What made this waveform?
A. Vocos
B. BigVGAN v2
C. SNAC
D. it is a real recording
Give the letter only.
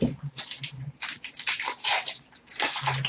B